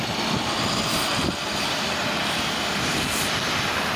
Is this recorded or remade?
recorded